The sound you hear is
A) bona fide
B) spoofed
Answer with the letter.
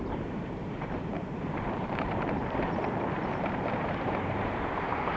B